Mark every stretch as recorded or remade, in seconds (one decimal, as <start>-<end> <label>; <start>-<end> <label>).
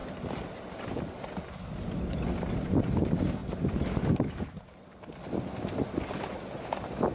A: 0.0-7.1 recorded